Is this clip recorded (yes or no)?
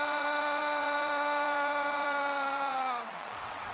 no